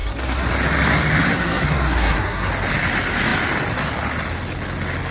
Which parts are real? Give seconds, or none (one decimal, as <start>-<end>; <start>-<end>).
0.5-1.3; 2.5-5.1